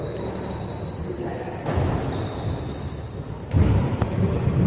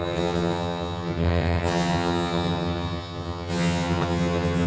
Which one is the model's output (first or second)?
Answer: second